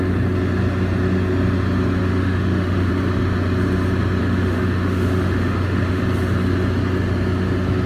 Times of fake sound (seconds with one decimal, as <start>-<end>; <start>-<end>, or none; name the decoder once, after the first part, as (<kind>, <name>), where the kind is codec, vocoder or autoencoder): 2.0-2.9 (autoencoder, DAC-VAE); 4.2-6.0